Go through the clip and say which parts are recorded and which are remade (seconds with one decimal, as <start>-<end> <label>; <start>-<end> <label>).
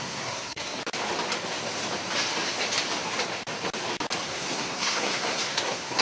0.0-0.8 remade; 0.8-4.2 recorded; 4.2-6.0 remade